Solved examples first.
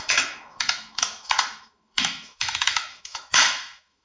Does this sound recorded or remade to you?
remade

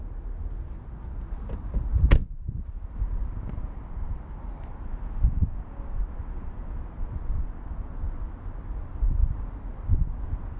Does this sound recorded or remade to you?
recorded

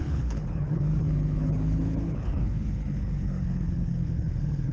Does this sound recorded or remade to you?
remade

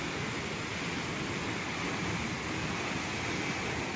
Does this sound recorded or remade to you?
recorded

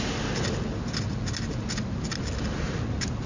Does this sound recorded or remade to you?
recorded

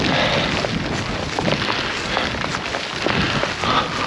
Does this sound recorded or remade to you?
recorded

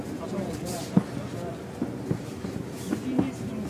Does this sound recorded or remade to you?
recorded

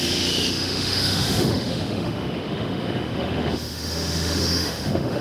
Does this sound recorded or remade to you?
remade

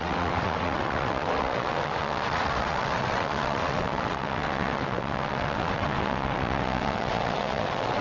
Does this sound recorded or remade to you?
remade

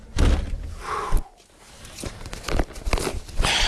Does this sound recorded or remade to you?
recorded